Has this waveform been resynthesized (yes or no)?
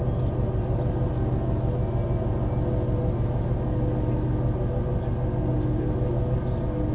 no